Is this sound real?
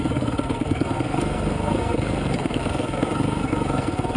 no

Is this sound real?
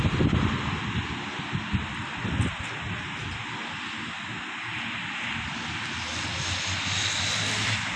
yes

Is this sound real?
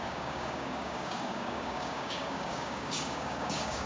no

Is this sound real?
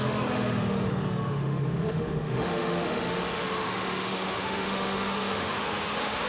no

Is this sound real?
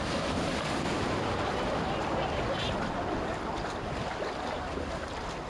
yes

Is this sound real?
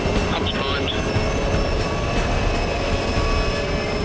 yes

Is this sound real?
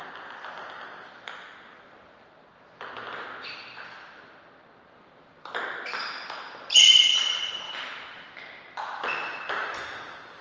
yes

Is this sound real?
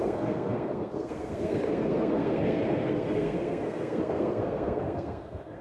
no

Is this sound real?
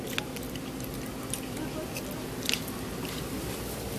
yes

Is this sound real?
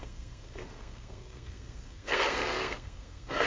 no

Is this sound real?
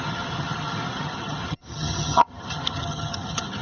no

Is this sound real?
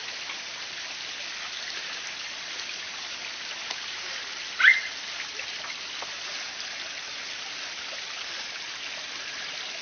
yes